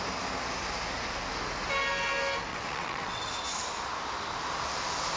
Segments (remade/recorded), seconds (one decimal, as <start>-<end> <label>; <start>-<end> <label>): 0.0-2.5 recorded; 2.5-3.2 remade; 3.2-5.2 recorded